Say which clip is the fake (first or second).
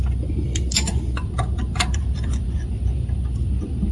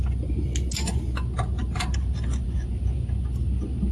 first